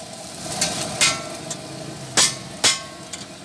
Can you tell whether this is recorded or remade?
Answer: recorded